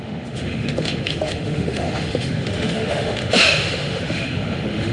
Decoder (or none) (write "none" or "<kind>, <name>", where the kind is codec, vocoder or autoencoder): autoencoder, DAC-VAE